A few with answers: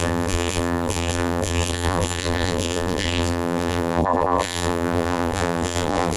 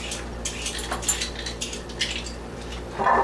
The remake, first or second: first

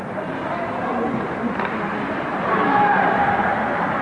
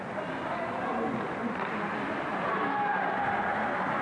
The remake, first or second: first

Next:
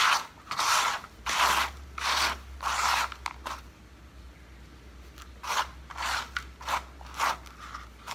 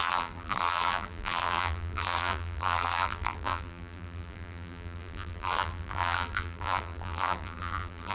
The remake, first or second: second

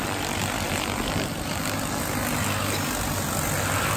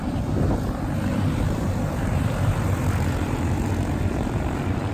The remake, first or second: second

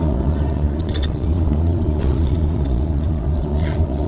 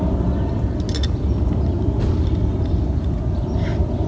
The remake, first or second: first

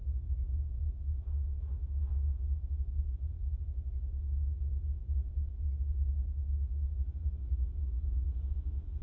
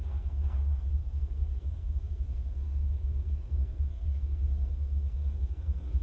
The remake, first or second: second